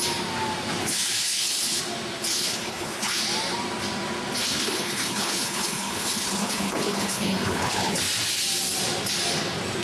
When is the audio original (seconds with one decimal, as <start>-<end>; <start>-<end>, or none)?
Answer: 0.0-0.8; 1.8-2.3; 3.2-4.4; 8.0-9.8